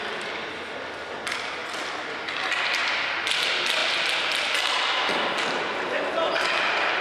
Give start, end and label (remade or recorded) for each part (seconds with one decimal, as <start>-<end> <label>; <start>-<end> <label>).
0.0-7.0 recorded